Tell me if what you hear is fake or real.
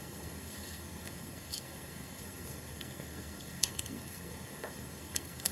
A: fake